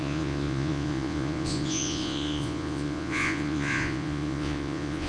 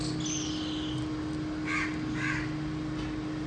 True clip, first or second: second